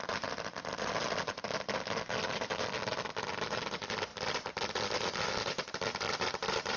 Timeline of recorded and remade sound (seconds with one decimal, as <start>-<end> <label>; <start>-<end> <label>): 0.0-6.8 recorded